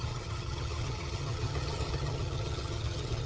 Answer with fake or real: fake